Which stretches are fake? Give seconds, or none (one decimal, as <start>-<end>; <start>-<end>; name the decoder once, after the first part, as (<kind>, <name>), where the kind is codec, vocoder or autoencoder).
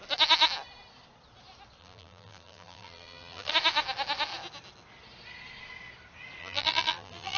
1.8-3.5 (vocoder, BigVGAN v2); 6.4-7.4